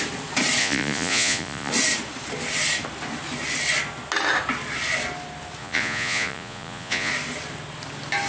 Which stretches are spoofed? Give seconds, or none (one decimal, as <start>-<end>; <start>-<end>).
0.6-1.7; 5.6-7.1